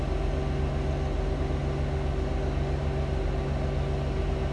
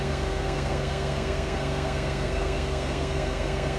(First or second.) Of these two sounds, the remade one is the second